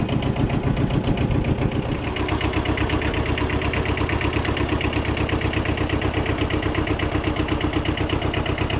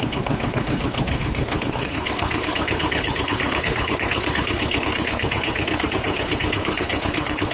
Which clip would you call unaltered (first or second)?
first